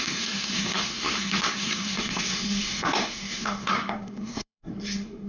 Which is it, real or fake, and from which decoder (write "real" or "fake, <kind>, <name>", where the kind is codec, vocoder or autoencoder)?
fake, codec, SNAC